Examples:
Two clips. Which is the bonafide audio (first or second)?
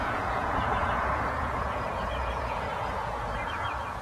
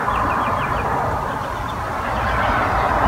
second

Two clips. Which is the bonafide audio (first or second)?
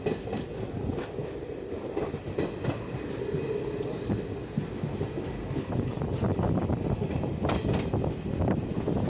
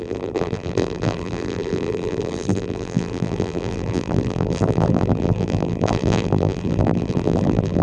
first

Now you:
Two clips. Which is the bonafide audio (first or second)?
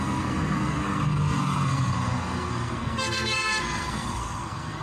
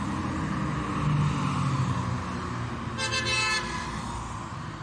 second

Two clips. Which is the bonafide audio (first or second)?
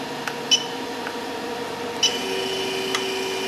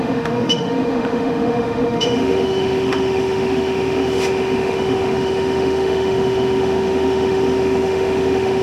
first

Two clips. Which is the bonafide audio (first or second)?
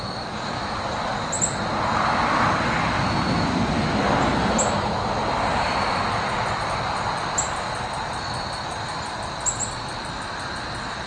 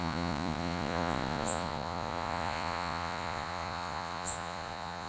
first